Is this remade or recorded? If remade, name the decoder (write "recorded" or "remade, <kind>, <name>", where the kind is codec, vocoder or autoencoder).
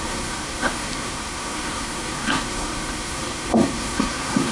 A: remade, codec, SNAC